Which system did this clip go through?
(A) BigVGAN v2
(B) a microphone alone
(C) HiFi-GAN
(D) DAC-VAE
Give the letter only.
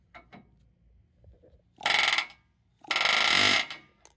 B